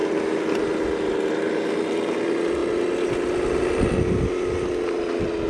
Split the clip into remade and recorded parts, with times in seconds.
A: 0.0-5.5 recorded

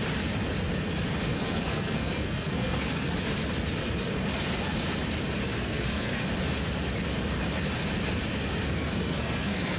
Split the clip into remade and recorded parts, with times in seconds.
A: 0.0-1.2 recorded; 1.2-3.1 remade; 3.1-5.5 recorded; 5.5-6.2 remade; 6.2-8.6 recorded; 8.6-9.8 remade

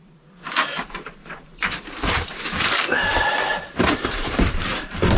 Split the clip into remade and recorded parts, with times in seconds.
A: 0.0-1.2 recorded; 1.2-2.1 remade; 2.1-3.0 recorded; 3.0-4.3 remade; 4.3-5.2 recorded

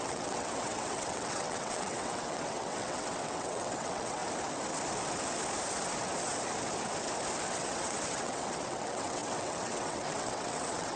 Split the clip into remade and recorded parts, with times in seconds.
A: 0.0-4.2 remade; 4.2-7.5 recorded; 7.5-11.0 remade

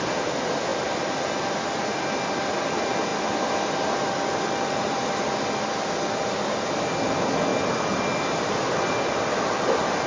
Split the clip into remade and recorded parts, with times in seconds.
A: 0.0-10.1 recorded